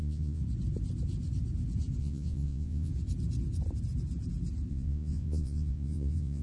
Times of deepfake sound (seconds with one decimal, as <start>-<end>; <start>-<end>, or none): 0.0-0.4; 2.0-2.9; 4.7-6.4